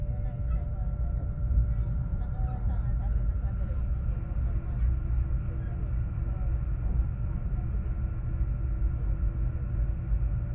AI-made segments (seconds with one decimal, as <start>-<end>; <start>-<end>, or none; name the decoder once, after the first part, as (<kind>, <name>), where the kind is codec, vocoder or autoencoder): 2.1-3.3 (vocoder, BigVGAN v2)